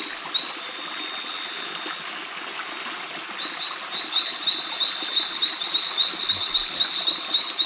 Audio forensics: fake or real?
real